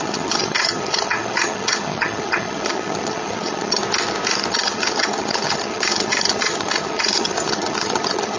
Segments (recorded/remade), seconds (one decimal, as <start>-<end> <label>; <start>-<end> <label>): 0.0-3.8 remade; 3.8-4.5 recorded; 4.5-8.4 remade